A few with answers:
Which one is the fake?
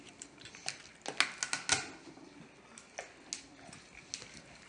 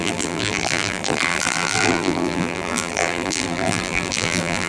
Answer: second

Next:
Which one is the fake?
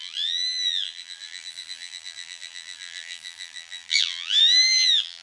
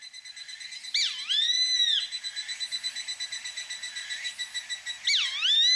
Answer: first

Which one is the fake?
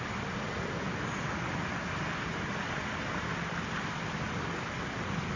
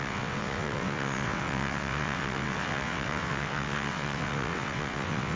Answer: second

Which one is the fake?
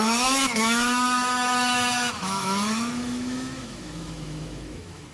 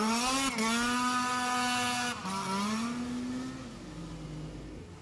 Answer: first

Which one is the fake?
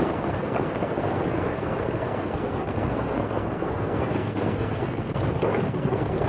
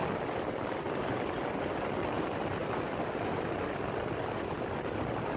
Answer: first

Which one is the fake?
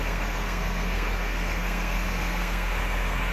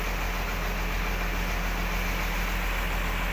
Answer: first